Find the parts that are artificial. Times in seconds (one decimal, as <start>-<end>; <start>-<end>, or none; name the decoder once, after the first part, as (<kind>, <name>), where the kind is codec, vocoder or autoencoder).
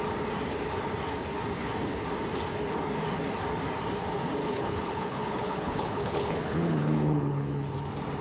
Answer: 4.4-7.7 (codec, HILCodec)